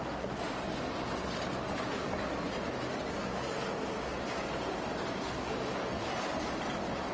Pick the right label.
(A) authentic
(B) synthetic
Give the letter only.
A